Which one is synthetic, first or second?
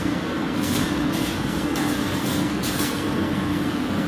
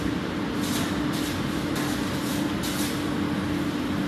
first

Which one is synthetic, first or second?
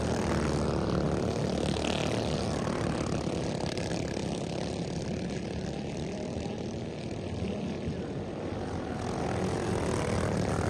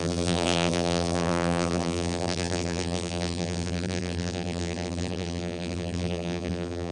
second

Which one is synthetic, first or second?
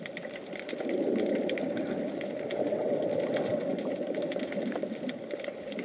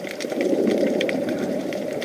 second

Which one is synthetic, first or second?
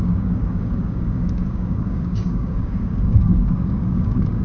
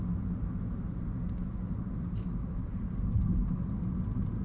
first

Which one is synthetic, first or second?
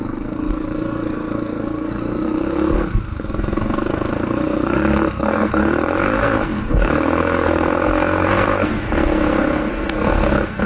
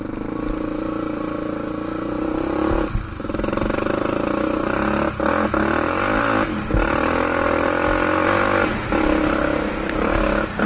first